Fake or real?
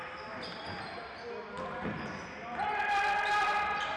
real